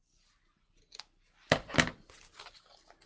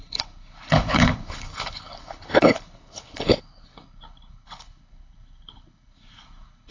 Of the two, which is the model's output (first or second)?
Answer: second